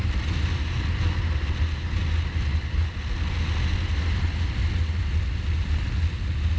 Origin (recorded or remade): recorded